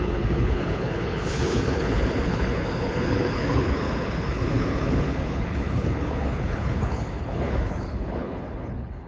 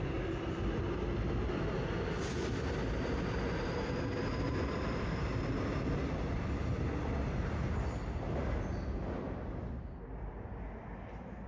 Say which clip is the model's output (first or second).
first